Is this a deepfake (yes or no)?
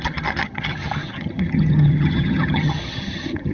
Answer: yes